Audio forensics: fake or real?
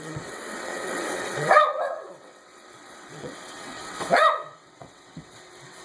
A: fake